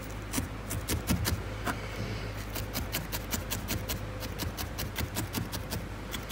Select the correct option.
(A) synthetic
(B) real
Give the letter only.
B